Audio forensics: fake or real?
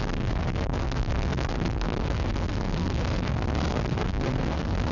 fake